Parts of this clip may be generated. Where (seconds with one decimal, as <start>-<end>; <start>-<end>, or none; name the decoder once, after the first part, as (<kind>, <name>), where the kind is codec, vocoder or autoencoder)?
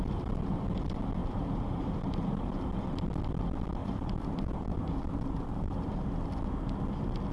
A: 1.2-2.6 (vocoder, BigVGAN v2); 3.8-6.3